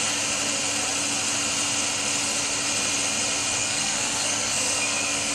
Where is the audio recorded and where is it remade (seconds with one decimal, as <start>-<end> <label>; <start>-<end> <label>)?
0.0-3.6 recorded; 3.6-5.3 remade